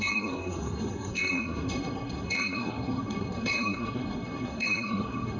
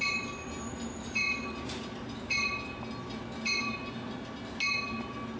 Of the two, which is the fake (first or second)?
first